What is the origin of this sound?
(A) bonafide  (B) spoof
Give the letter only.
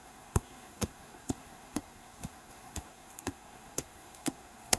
B